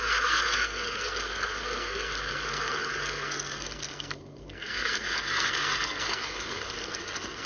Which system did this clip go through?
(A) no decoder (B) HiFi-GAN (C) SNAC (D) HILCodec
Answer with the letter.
C